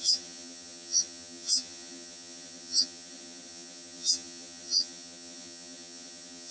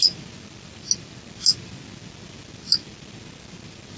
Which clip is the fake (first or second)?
first